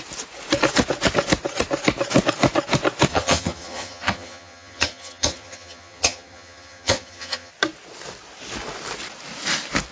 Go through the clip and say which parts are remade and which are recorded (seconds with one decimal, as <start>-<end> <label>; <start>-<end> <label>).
0.0-3.1 recorded; 3.1-7.5 remade; 7.5-9.9 recorded